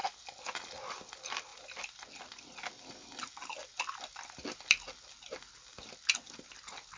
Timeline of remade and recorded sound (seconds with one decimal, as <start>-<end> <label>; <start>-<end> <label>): 0.0-7.0 recorded